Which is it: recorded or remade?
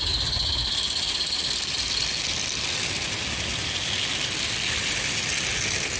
recorded